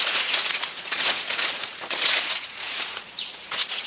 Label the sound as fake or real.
fake